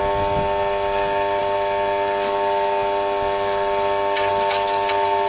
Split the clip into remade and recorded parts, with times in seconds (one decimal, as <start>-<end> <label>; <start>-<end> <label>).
0.0-5.3 recorded